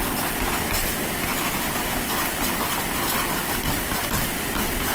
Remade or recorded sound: recorded